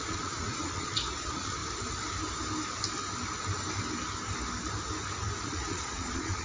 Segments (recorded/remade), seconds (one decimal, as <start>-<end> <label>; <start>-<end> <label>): 0.0-1.6 remade; 1.6-5.4 recorded; 5.4-6.4 remade